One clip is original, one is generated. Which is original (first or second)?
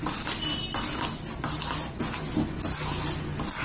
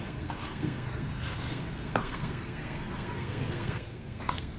first